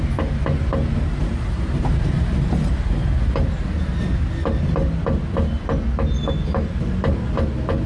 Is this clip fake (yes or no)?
no